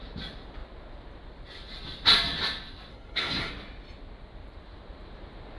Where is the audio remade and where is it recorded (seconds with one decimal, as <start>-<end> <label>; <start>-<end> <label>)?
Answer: 0.0-2.9 recorded; 2.9-3.5 remade; 3.5-5.6 recorded